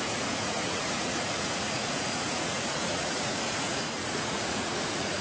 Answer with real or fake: fake